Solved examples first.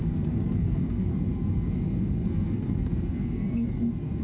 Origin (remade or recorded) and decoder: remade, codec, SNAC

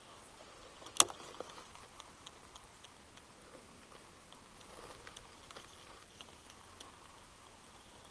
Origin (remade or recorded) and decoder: recorded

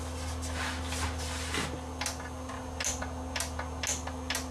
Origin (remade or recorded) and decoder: recorded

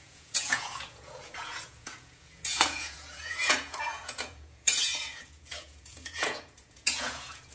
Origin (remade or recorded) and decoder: remade, vocoder, Vocos